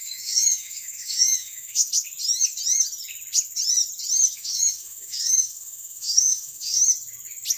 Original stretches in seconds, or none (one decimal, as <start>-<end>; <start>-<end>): 1.9-4.3; 6.8-7.6